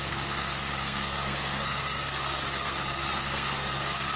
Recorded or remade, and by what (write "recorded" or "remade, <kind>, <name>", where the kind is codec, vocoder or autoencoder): remade, codec, SNAC